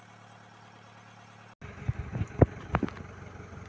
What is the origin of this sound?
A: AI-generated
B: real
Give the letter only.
B